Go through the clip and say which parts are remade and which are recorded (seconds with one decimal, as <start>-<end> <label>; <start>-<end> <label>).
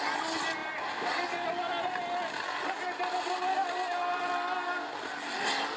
0.0-5.8 recorded